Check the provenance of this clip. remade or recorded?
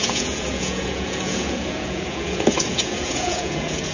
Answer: remade